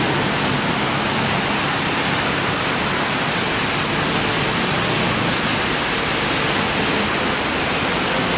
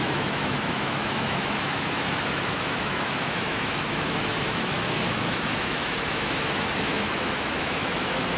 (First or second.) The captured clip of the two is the first